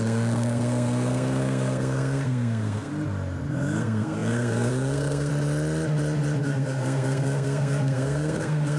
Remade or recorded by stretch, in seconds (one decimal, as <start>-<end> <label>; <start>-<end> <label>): 0.0-2.9 remade; 2.9-3.5 recorded; 3.5-5.3 remade; 5.3-6.4 recorded; 6.4-8.8 remade